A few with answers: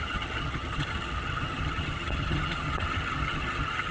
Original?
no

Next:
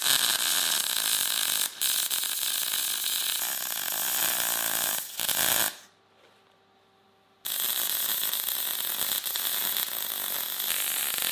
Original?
yes